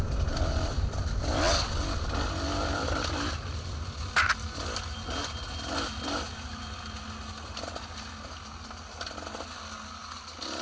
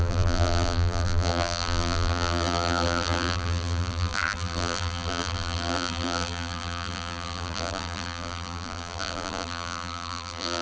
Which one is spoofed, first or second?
second